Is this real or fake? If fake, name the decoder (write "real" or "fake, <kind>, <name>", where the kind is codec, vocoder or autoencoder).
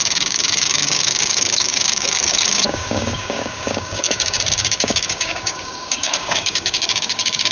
fake, codec, DAC